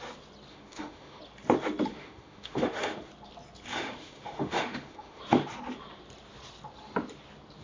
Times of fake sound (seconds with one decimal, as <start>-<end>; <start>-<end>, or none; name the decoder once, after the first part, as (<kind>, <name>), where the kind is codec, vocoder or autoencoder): 0.5-1.2 (autoencoder, DAC-VAE); 1.9-3.1; 3.7-5.2